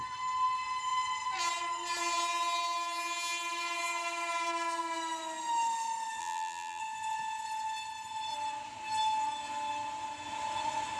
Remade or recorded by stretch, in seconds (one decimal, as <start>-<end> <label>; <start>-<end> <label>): 0.0-6.2 recorded; 6.2-6.8 remade; 6.8-11.0 recorded